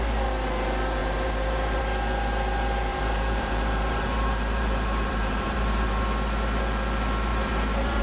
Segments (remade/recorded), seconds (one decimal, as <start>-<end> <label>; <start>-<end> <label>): 0.0-1.0 recorded; 1.0-1.8 remade; 1.8-2.9 recorded; 2.9-6.0 remade; 6.0-7.3 recorded; 7.3-8.0 remade